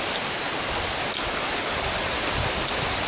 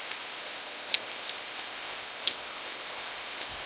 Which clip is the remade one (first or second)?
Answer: second